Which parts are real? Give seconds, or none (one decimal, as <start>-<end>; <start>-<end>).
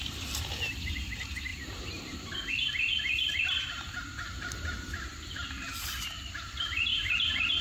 0.0-1.5; 2.5-5.1; 6.2-6.9